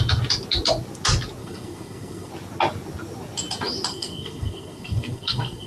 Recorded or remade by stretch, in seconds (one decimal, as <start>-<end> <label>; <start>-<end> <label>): 0.0-1.4 recorded; 1.4-2.3 remade; 2.3-3.9 recorded; 3.9-5.7 remade